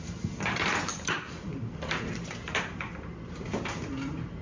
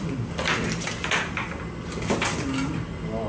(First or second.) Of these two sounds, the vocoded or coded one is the first